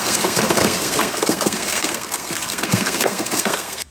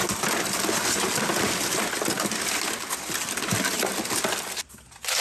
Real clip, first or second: second